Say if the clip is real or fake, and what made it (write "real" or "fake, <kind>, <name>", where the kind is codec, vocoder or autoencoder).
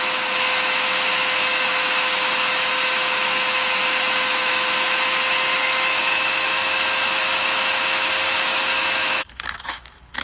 fake, autoencoder, DAC-VAE